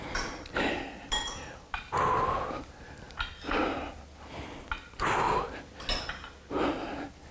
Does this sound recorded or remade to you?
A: recorded